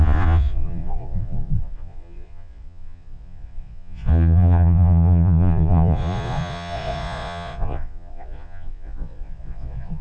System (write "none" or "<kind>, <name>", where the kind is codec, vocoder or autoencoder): vocoder, Vocos